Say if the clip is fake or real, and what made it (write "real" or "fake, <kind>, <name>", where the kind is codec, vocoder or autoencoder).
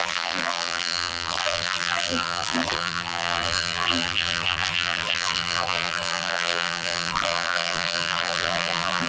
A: fake, vocoder, BigVGAN v2